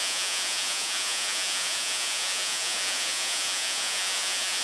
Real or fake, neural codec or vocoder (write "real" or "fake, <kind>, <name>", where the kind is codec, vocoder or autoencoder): fake, vocoder, Vocos